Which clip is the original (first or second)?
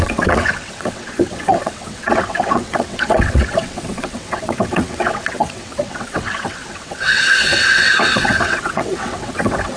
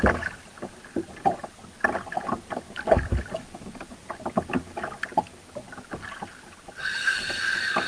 second